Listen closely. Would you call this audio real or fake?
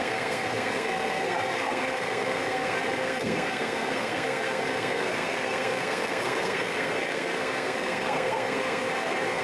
fake